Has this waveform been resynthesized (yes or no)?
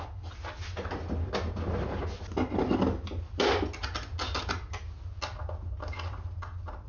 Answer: no